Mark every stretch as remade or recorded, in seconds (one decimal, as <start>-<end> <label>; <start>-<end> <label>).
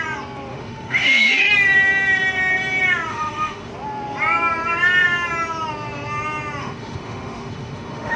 0.0-0.5 recorded; 0.5-1.5 remade; 1.5-3.1 recorded; 3.1-3.7 remade; 3.7-6.6 recorded; 6.6-8.2 remade